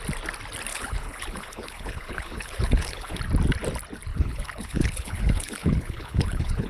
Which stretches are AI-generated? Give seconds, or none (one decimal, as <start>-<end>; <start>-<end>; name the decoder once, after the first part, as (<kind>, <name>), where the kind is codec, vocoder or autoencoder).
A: 0.7-3.2 (codec, HILCodec); 4.1-6.7